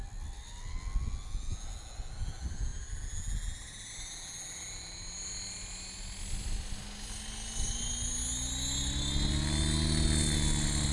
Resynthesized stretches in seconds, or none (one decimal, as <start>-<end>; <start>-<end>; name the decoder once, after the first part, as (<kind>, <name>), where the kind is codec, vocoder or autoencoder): none

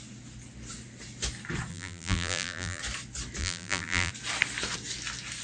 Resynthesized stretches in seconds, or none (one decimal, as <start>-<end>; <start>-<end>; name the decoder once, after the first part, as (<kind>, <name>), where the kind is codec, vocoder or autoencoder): 1.7-2.8 (vocoder, BigVGAN v2); 3.4-4.1

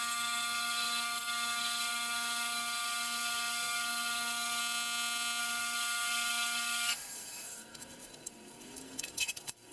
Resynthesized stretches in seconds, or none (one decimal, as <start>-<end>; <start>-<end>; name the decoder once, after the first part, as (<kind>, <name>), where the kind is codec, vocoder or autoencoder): 0.0-4.6 (codec, SNAC); 5.4-9.7

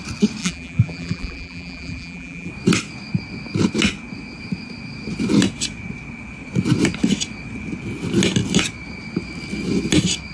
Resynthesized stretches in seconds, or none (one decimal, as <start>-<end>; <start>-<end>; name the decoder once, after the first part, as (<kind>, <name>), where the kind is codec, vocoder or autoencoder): 0.4-2.5 (vocoder, BigVGAN v2)